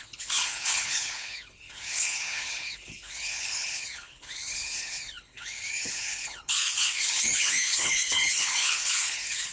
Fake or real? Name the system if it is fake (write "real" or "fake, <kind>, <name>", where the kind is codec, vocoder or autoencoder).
fake, codec, HILCodec